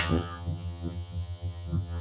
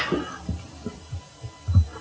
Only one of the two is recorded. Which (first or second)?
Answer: second